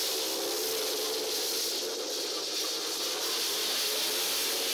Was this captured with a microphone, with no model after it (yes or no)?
yes